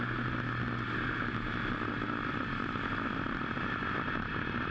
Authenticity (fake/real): real